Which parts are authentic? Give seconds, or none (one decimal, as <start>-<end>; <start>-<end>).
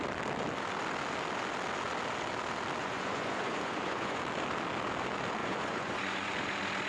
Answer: 0.0-2.8; 4.2-5.4; 6.3-6.9